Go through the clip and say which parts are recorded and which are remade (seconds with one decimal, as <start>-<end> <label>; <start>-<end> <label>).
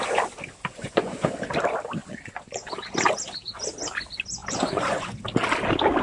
0.0-0.7 recorded; 0.7-1.3 remade; 1.3-2.0 recorded; 2.0-2.7 remade; 2.7-4.4 recorded; 4.4-5.2 remade; 5.2-6.0 recorded